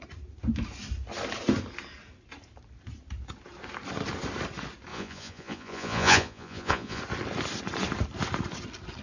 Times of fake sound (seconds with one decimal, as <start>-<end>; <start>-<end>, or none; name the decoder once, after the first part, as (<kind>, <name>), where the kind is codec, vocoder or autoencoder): 4.9-7.0 (vocoder, Vocos)